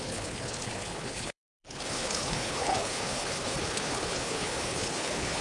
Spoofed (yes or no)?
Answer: yes